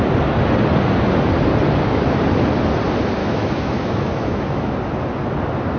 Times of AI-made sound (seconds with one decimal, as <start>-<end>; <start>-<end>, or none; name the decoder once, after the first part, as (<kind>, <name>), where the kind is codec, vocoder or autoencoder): 3.2-4.7 (autoencoder, DAC-VAE)